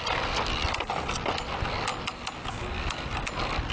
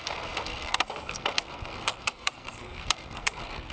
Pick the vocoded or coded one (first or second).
second